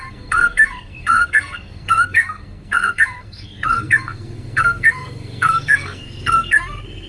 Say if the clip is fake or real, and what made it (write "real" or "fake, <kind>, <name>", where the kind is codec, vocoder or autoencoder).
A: fake, codec, SNAC